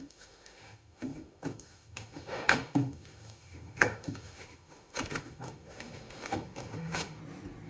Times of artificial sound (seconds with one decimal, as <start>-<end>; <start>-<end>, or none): 0.0-7.2